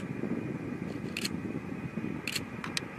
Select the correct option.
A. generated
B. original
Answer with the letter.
B